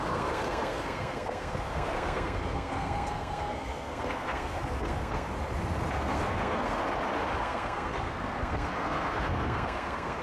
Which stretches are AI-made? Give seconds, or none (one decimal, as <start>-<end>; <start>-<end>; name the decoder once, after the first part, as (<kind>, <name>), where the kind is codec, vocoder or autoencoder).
0.0-5.3 (codec, SNAC); 5.9-6.8; 7.4-10.2